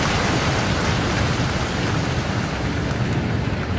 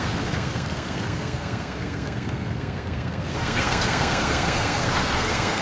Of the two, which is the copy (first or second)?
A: second